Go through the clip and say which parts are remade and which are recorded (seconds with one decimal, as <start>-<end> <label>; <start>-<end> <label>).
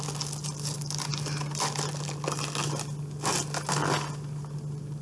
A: 0.0-5.0 recorded